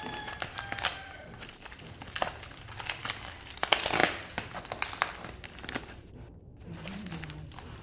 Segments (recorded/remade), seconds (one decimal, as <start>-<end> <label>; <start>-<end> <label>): 0.0-1.0 recorded; 1.0-2.0 remade; 2.0-6.5 recorded; 6.5-7.1 remade; 7.1-7.8 recorded